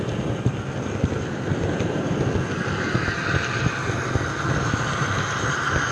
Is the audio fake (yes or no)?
no